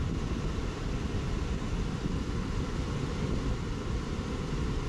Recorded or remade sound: recorded